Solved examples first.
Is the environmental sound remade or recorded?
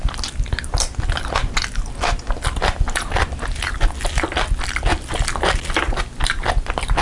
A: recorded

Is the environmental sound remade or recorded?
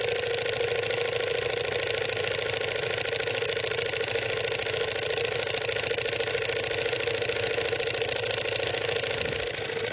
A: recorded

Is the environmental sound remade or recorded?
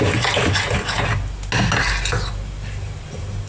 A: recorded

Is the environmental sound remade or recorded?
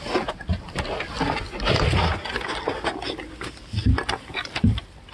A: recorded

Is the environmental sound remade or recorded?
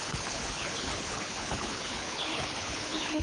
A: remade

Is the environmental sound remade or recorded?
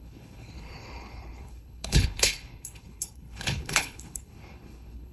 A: remade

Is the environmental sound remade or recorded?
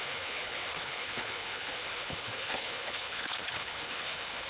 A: remade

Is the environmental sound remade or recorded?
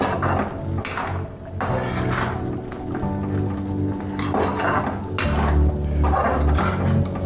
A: recorded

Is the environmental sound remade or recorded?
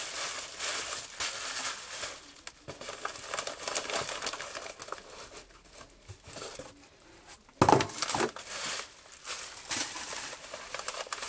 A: recorded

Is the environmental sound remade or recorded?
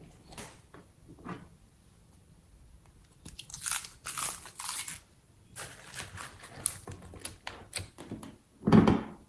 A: recorded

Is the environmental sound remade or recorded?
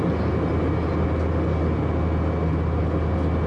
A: recorded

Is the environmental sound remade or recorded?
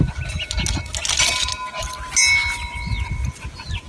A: recorded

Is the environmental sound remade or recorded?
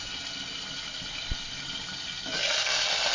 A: recorded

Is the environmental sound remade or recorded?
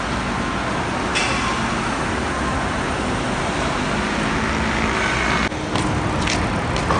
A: recorded